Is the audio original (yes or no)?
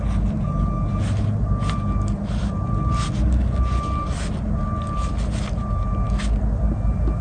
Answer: yes